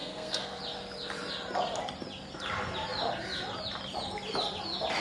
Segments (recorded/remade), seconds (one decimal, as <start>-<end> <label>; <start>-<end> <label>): 0.0-0.6 remade; 0.6-5.0 recorded